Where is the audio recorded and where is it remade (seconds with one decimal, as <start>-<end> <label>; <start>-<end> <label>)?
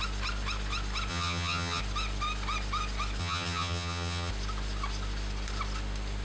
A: 0.0-1.1 recorded; 1.1-1.8 remade; 1.8-3.2 recorded; 3.2-4.3 remade; 4.3-6.2 recorded